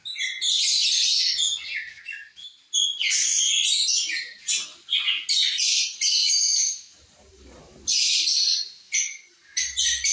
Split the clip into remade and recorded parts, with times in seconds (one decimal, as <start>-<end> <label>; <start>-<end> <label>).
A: 0.0-10.1 recorded